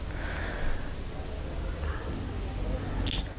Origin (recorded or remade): recorded